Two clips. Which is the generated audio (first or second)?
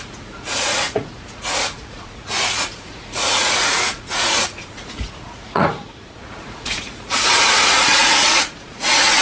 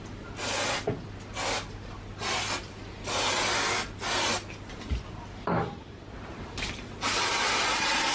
first